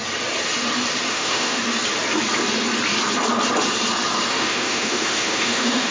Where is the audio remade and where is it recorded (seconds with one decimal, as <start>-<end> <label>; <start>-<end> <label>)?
0.0-1.1 recorded; 1.1-1.6 remade; 1.6-4.3 recorded; 4.3-5.9 remade